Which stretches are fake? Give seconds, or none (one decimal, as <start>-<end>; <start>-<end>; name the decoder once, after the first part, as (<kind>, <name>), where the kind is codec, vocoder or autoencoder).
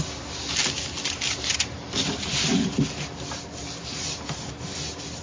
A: none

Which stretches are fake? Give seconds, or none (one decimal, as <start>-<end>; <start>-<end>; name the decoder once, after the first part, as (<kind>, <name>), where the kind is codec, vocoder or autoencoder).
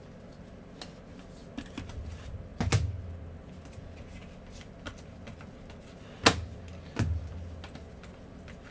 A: none